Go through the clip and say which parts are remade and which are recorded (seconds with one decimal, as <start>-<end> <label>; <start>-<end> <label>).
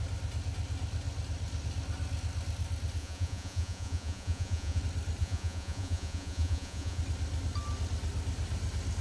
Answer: 0.0-3.0 recorded; 3.0-4.8 remade; 4.8-5.2 recorded; 5.2-7.0 remade; 7.0-9.0 recorded